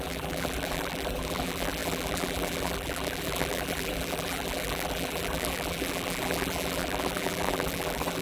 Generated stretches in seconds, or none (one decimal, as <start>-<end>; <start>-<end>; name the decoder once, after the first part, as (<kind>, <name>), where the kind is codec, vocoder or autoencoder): 0.0-8.2 (vocoder, BigVGAN v2)